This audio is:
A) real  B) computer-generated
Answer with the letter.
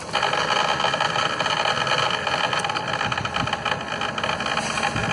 A